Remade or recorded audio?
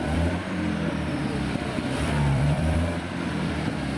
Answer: remade